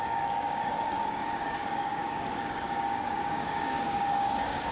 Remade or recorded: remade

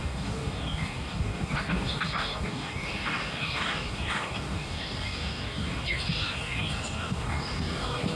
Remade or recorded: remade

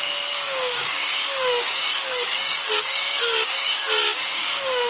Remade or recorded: remade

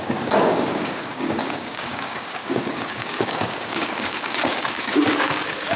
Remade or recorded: remade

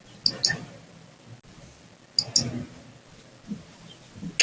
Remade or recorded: recorded